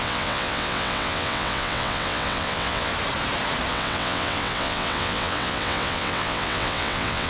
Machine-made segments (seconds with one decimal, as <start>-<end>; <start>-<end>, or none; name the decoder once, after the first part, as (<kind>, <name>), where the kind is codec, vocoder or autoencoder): 0.0-2.9 (vocoder, WaveNeXt); 3.7-7.3